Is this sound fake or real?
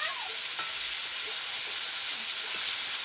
real